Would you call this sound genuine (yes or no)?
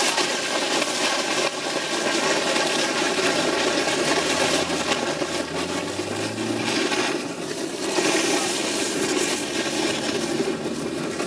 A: yes